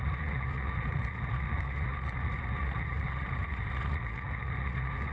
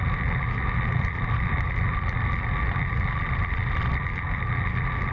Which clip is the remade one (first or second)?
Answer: first